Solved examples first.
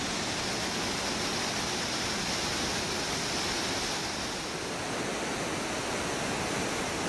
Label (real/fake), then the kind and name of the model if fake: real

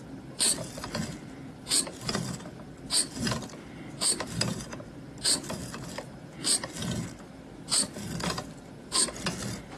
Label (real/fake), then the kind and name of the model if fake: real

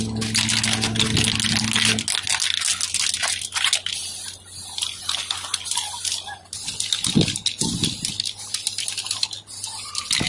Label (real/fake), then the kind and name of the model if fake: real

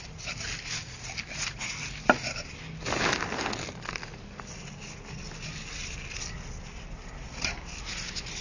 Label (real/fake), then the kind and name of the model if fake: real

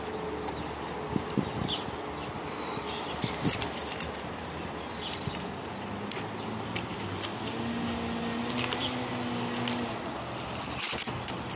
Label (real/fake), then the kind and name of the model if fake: real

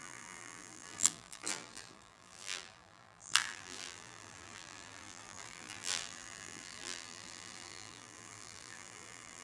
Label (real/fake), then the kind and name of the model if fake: fake, vocoder, BigVGAN v2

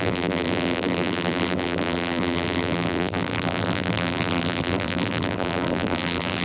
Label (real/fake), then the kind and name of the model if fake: fake, vocoder, BigVGAN v2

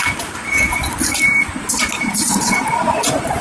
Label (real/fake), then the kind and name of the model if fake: fake, vocoder, BigVGAN v2